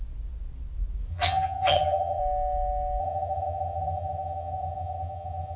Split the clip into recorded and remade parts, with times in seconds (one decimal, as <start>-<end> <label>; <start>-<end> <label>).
0.0-1.1 recorded; 1.1-2.2 remade; 2.2-3.0 recorded; 3.0-5.6 remade